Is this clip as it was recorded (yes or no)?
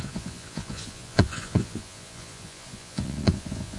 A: no